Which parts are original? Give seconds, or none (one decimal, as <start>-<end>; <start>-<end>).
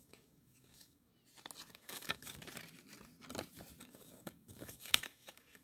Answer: 1.1-1.7; 2.4-3.8